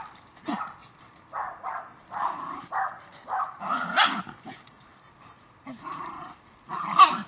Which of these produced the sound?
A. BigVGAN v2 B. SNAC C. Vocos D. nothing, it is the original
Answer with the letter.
D